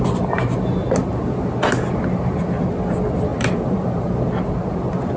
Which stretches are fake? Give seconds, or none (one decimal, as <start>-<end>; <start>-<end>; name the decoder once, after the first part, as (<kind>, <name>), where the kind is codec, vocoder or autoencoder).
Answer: 3.3-4.3 (vocoder, BigVGAN v2)